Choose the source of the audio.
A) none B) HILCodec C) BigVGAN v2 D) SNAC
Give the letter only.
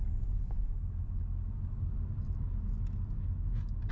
A